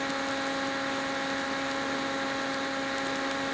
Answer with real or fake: real